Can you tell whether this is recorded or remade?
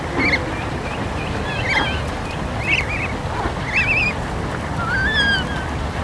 recorded